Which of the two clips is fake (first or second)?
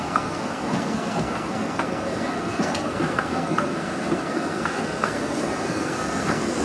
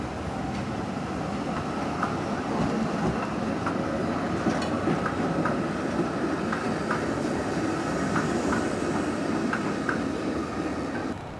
first